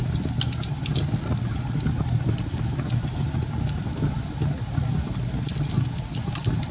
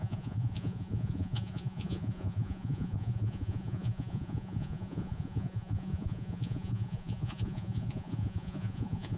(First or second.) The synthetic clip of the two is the second